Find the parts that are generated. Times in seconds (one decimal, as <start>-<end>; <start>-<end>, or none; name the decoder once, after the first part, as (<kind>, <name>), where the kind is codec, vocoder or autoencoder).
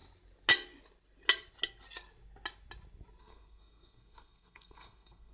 3.2-5.3 (codec, SNAC)